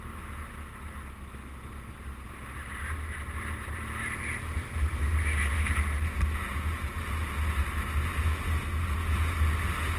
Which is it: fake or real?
real